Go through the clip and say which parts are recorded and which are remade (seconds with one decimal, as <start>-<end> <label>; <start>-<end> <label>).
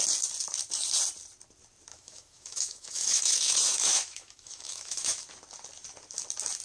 0.0-1.9 recorded; 1.9-5.2 remade; 5.2-6.6 recorded